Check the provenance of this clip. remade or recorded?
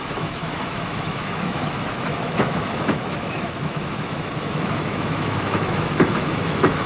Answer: remade